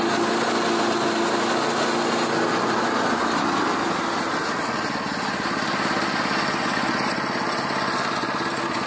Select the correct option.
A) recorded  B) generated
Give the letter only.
A